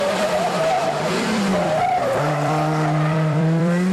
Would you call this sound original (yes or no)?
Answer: no